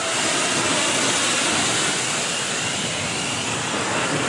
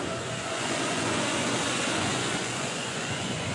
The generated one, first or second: second